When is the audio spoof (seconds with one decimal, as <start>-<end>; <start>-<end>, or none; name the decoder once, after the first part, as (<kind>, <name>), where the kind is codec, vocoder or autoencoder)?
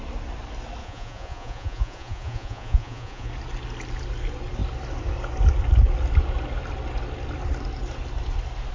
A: 0.8-3.3 (vocoder, Vocos)